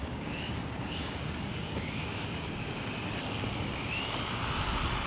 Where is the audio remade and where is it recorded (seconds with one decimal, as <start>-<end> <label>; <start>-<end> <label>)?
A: 0.0-3.1 remade; 3.1-5.1 recorded